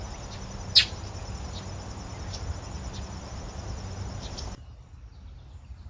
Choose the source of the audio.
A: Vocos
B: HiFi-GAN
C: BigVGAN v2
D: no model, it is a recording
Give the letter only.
D